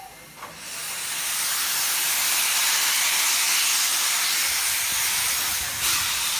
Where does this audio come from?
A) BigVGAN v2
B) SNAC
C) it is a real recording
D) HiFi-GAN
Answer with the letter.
C